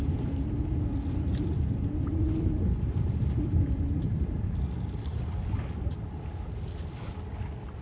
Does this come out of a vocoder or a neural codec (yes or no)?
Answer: no